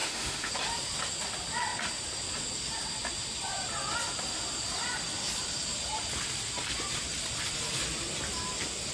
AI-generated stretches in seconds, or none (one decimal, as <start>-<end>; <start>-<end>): 0.0-0.5